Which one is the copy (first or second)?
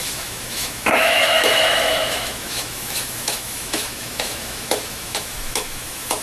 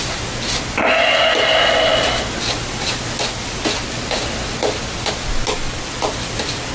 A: first